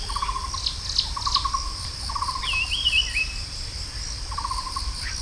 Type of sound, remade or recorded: recorded